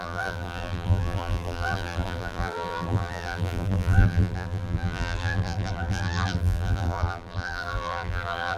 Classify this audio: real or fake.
fake